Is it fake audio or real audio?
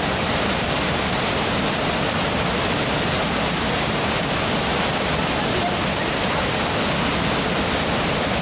real